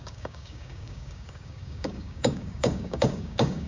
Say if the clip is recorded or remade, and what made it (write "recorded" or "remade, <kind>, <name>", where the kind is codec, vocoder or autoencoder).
remade, codec, DAC